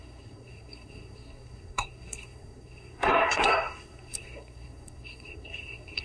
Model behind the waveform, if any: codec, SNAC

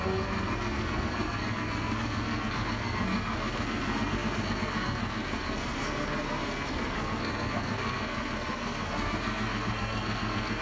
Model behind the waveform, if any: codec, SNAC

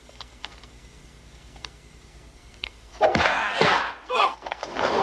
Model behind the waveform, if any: codec, SNAC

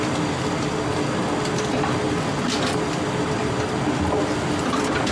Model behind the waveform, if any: none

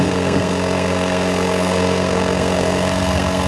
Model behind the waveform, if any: codec, SNAC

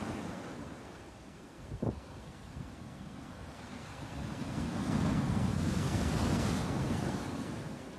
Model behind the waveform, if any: codec, SNAC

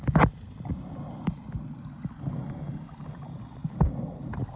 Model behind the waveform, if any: none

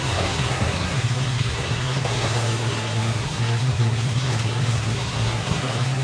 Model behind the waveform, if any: codec, SNAC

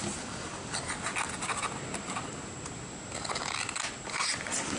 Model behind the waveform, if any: none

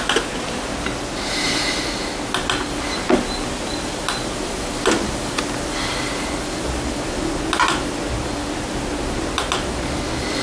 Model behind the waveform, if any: none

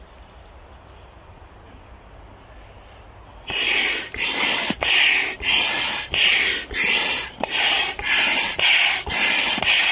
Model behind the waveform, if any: none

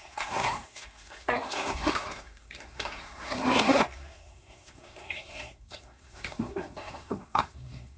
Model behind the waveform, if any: codec, SNAC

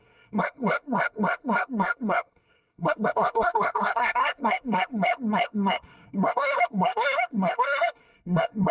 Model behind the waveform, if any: codec, SNAC